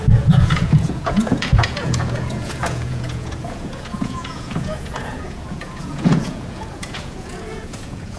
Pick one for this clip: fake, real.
fake